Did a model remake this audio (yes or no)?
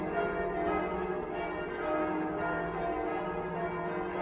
no